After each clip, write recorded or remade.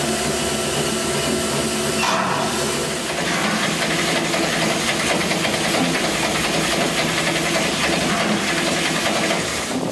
recorded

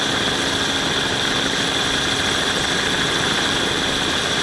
recorded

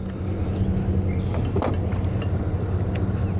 recorded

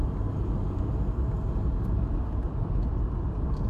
recorded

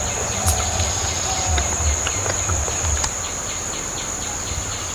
recorded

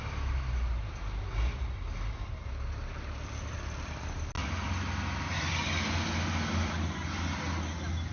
recorded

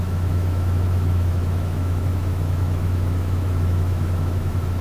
remade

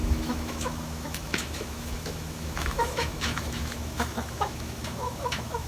remade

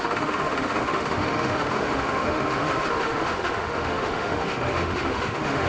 remade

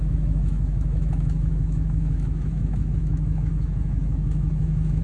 remade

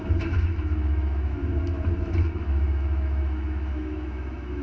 remade